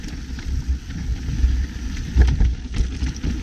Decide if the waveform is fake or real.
real